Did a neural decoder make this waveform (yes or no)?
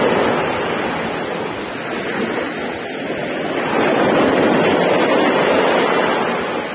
no